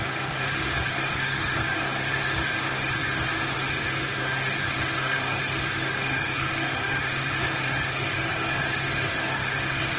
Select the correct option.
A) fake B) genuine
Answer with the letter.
A